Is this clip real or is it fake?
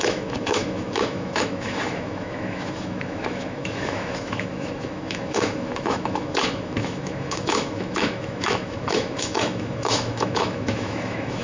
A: fake